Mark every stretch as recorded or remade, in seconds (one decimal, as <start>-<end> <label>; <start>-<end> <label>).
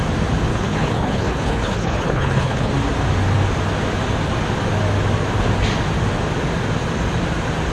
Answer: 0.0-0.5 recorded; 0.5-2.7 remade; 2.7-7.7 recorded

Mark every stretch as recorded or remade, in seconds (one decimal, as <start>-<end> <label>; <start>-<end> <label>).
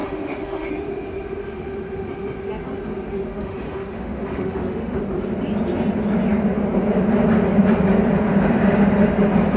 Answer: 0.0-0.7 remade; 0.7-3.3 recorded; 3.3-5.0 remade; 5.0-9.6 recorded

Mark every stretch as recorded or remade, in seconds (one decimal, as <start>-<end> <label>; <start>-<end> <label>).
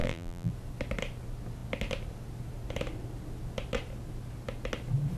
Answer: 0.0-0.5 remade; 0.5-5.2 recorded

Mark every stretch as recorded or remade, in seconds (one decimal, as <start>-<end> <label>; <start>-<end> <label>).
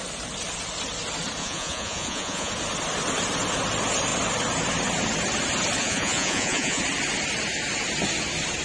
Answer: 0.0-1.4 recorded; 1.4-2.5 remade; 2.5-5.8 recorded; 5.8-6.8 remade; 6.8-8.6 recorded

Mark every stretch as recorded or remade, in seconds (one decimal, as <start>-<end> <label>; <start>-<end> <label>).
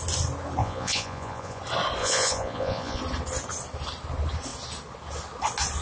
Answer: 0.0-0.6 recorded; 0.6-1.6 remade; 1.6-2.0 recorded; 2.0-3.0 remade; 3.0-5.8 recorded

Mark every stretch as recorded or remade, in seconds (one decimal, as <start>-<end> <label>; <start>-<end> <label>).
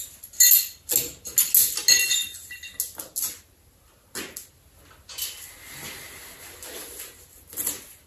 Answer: 0.0-8.1 recorded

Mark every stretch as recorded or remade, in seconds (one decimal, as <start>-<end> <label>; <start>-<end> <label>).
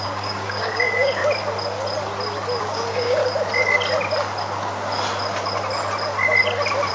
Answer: 0.0-1.2 remade; 1.2-2.6 recorded; 2.6-3.2 remade; 3.2-6.9 recorded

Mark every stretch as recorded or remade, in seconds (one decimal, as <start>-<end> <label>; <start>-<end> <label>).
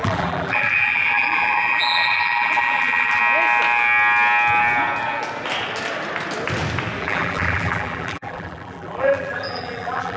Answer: 0.0-3.2 remade; 3.2-7.0 recorded; 7.0-10.2 remade